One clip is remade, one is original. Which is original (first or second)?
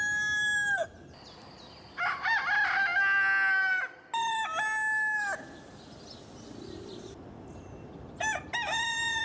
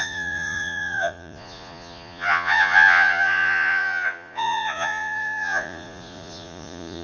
first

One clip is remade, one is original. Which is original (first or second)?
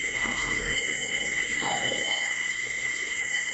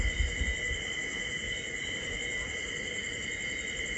second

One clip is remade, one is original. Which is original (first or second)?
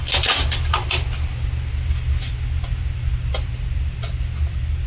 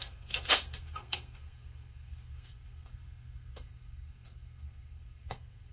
first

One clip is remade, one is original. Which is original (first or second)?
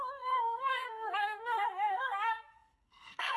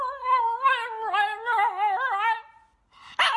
second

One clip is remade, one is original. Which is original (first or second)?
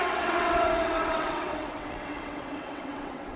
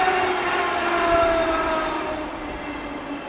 second